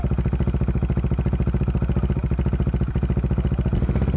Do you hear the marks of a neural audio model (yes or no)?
no